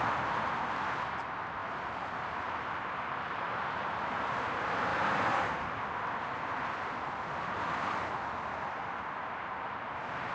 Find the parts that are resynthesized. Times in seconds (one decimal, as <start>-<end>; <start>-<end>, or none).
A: 1.6-4.4; 4.9-5.7

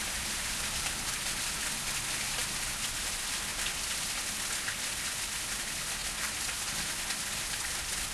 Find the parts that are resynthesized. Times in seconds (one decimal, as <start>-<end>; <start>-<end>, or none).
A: 0.0-3.5; 5.0-6.0; 7.5-8.1

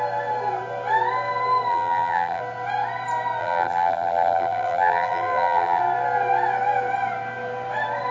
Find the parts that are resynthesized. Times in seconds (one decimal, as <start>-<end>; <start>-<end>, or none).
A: 1.7-2.4; 3.4-5.8

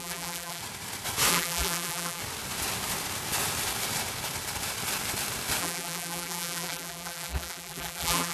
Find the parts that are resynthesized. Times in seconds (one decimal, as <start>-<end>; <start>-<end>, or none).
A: 0.0-0.6; 1.3-2.2; 5.6-8.3